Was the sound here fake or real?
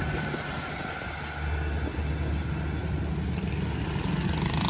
real